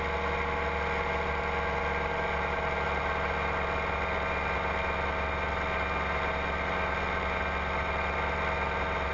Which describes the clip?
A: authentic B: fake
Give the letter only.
A